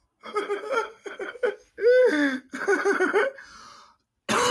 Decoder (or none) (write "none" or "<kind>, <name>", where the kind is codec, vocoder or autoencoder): none